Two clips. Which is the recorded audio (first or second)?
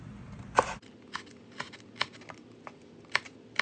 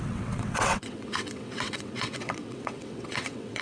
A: first